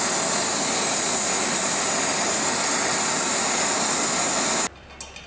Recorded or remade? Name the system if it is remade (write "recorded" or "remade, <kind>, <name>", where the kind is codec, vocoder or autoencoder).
recorded